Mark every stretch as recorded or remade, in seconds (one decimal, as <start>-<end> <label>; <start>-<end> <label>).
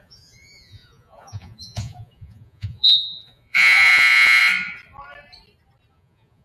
0.0-4.4 remade; 4.4-5.9 recorded; 5.9-6.4 remade